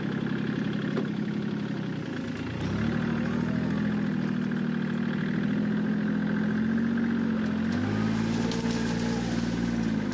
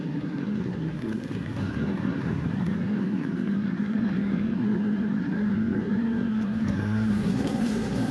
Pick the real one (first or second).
first